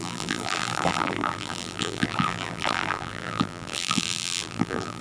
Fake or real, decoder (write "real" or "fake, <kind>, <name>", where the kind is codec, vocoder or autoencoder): fake, vocoder, BigVGAN v2